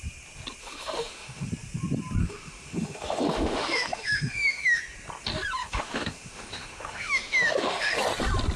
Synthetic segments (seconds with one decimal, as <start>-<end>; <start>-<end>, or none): 0.6-1.5; 2.2-4.8; 5.6-8.0